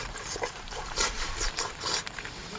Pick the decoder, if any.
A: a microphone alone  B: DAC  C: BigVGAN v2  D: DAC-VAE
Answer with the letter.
C